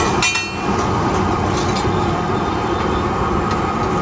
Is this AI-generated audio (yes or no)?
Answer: no